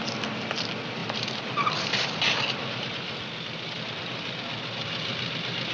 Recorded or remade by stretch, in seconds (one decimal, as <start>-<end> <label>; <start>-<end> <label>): 0.0-1.0 recorded; 1.0-4.4 remade; 4.4-5.1 recorded; 5.1-5.7 remade